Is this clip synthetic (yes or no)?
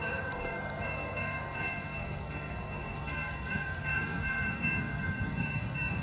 yes